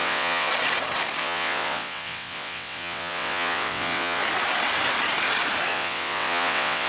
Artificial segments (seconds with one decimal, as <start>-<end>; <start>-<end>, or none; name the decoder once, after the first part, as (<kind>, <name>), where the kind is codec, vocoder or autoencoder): 0.0-0.5 (vocoder, WaveNeXt); 1.2-4.2; 5.7-6.9